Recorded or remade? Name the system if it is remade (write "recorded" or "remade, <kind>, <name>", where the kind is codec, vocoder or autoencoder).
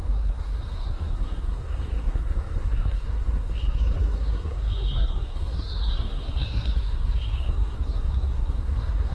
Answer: remade, codec, SNAC